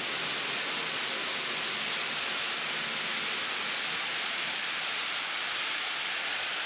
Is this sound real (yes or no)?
yes